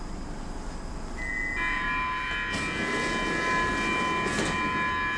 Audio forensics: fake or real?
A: real